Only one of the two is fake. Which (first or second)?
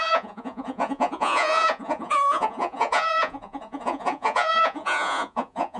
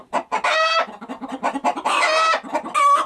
first